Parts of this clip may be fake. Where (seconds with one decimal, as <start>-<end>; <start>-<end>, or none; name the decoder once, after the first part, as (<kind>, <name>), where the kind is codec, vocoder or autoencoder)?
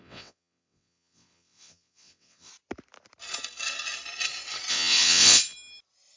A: 0.0-2.5 (vocoder, WaveNeXt); 4.7-5.4